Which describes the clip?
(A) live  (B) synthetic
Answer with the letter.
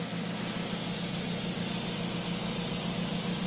A